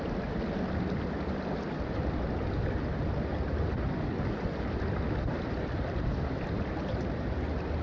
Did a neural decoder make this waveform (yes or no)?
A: no